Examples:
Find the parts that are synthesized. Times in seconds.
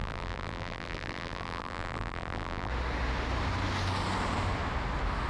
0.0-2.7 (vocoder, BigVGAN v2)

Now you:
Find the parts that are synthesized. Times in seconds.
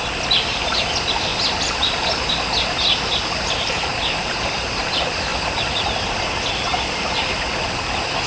1.3-2.3 (vocoder, BigVGAN v2); 6.7-7.2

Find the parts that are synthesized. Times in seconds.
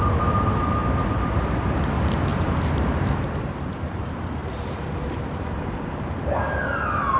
2.3-4.0 (vocoder, BigVGAN v2); 4.4-6.7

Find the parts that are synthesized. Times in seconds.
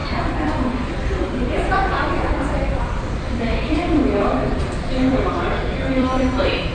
0.0-6.7 (vocoder, BigVGAN v2)